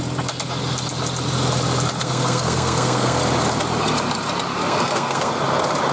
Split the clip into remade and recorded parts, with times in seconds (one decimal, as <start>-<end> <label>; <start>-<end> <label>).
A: 0.0-2.0 recorded; 2.0-3.2 remade; 3.2-4.6 recorded; 4.6-5.3 remade; 5.3-5.9 recorded